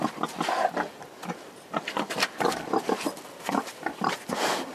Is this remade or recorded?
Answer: recorded